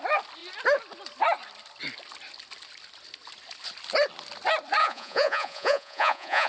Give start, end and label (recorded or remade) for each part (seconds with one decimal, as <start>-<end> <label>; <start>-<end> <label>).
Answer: 0.0-4.8 recorded; 4.8-6.5 remade